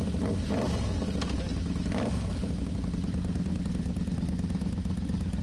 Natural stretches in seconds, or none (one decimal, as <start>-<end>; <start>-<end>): 0.0-5.4